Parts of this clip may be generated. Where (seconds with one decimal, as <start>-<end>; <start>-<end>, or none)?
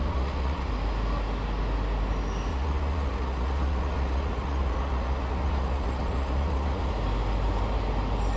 0.0-0.7; 2.5-6.9